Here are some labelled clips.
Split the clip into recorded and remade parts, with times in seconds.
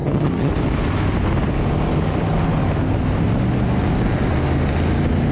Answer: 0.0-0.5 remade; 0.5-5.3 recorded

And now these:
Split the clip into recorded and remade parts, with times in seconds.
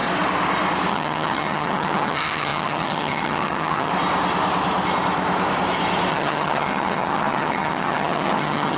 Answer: 0.0-0.9 recorded; 0.9-3.9 remade; 3.9-6.1 recorded; 6.1-8.8 remade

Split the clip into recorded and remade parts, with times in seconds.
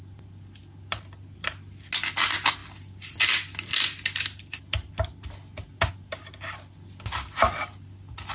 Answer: 0.0-8.3 recorded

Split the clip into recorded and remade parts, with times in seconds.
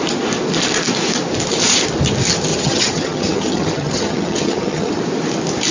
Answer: 0.0-2.5 recorded; 2.5-5.0 remade; 5.0-5.7 recorded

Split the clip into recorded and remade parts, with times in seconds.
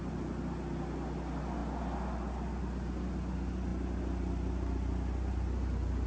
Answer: 0.0-6.1 recorded